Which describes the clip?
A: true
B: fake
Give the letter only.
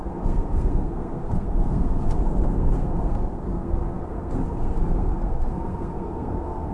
B